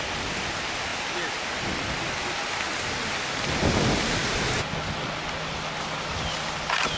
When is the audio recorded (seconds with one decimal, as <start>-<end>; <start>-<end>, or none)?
0.0-7.0